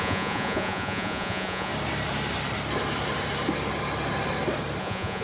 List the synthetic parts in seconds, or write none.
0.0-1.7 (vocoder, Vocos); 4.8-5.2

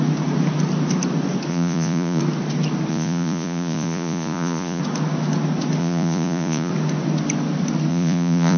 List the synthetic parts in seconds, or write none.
1.5-2.2 (vocoder, Vocos); 2.9-4.8; 5.8-6.7; 7.9-8.6

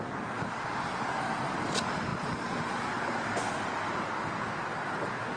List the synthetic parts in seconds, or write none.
none

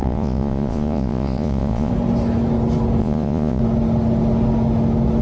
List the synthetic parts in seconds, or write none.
0.0-1.9 (vocoder, Vocos); 3.0-3.6

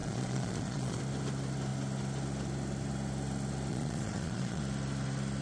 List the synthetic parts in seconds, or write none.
0.0-1.0 (vocoder, Vocos); 3.7-4.6

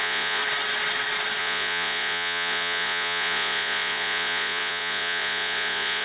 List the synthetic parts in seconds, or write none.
0.0-0.4 (vocoder, Vocos); 1.4-6.0

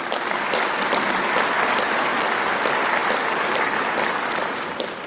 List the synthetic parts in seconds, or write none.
none

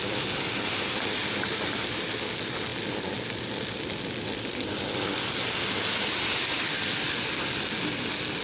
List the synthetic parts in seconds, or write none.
none